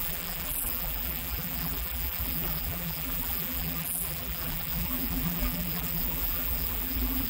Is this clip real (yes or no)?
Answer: no